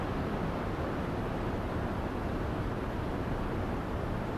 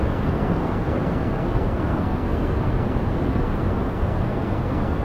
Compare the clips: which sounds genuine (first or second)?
first